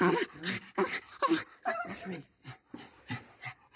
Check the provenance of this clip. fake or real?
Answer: real